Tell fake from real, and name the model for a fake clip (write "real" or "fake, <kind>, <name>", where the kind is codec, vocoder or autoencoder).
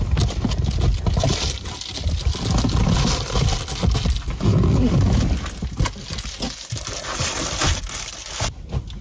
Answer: real